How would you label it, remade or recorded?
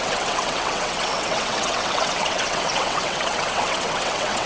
remade